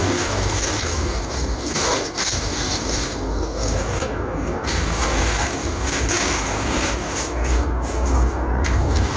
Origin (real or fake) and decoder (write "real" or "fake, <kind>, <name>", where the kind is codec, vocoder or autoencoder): fake, codec, DAC